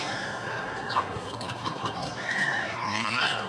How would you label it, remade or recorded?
remade